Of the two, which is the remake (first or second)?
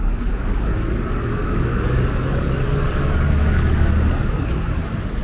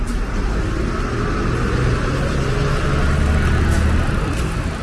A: first